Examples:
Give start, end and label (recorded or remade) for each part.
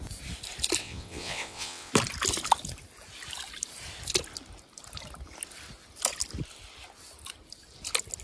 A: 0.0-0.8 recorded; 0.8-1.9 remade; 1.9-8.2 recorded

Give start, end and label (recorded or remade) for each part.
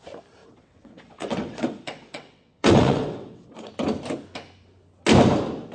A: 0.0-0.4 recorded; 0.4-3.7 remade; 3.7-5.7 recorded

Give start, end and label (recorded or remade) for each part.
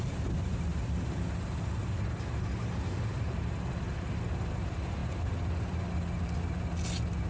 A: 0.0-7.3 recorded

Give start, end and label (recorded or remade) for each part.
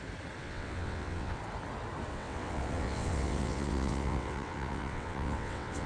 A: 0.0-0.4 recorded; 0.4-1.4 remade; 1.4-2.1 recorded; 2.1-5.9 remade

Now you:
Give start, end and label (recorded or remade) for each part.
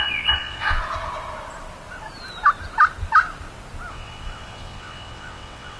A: 0.0-0.8 remade; 0.8-3.9 recorded; 3.9-5.8 remade